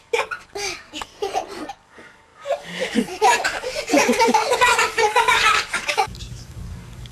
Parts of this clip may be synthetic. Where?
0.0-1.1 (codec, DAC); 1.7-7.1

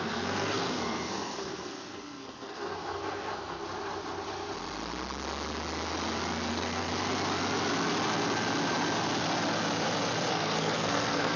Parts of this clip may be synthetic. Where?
0.0-3.6 (codec, SNAC); 6.5-6.9; 10.3-11.4

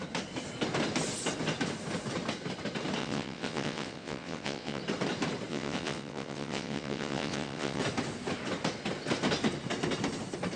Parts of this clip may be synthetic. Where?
3.0-4.8 (vocoder, WaveNeXt); 5.5-7.8

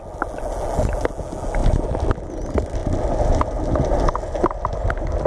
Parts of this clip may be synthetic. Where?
none

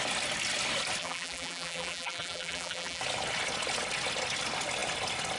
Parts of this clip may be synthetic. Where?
1.0-3.0 (vocoder, BigVGAN v2)